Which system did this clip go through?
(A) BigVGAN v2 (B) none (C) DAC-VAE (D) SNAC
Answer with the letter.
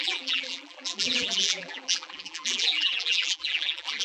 A